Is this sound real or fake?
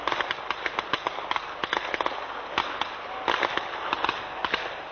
real